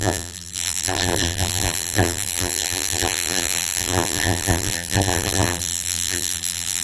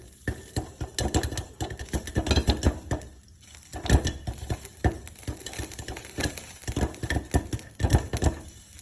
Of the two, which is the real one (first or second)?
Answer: second